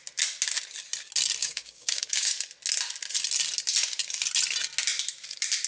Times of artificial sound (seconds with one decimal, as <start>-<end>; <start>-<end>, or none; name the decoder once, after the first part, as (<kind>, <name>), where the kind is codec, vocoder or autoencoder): 1.4-2.3 (codec, DAC)